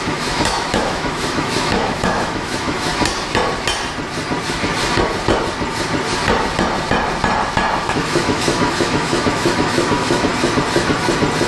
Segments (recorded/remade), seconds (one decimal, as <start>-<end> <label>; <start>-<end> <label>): 0.0-2.9 remade; 2.9-7.8 recorded; 7.8-10.3 remade; 10.3-11.5 recorded